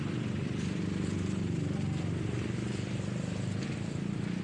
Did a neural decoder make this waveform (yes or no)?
no